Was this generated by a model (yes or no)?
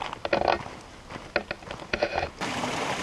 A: no